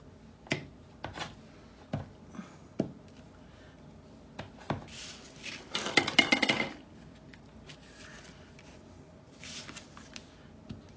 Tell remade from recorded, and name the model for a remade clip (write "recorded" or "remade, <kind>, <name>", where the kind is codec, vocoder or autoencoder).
recorded